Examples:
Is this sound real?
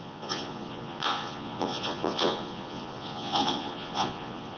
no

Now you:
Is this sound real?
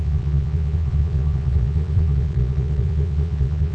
no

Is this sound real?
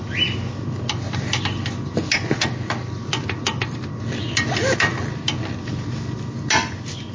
yes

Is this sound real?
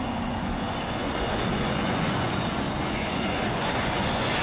no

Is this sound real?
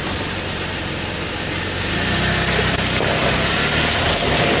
yes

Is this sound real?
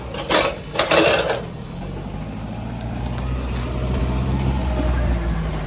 yes